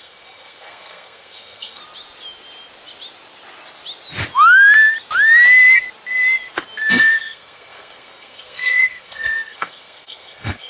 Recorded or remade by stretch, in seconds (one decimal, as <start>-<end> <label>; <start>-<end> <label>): 0.0-1.8 remade; 1.8-6.9 recorded; 6.9-10.7 remade